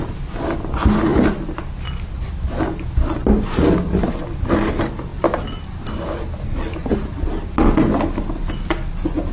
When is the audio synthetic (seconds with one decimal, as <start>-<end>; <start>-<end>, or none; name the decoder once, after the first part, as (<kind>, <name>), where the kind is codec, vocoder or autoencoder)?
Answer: none